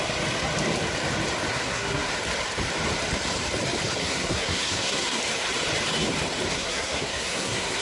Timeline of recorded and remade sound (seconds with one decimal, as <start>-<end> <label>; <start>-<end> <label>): 0.0-1.5 recorded; 1.5-2.1 remade; 2.1-4.0 recorded; 4.0-5.2 remade; 5.2-6.5 recorded; 6.5-7.8 remade